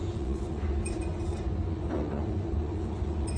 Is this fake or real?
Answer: fake